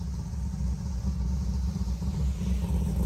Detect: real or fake real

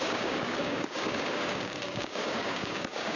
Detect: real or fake fake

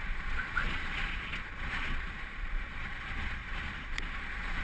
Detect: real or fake fake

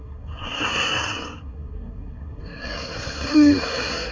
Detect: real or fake fake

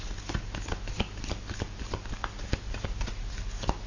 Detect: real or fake real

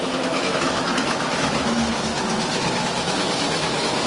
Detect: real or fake fake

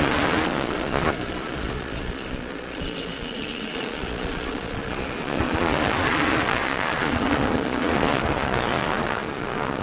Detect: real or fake fake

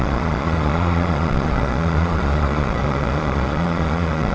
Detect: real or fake fake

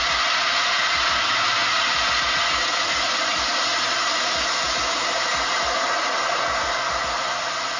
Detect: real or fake real